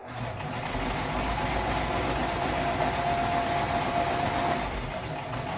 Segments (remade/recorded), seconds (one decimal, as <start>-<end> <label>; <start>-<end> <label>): 0.0-5.6 recorded